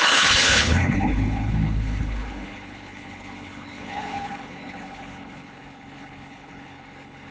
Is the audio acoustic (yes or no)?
no